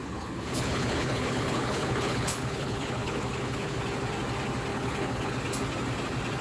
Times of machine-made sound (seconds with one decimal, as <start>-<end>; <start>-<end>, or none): 0.0-3.8; 4.7-5.3